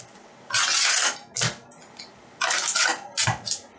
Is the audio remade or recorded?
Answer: recorded